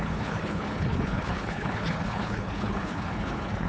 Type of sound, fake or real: fake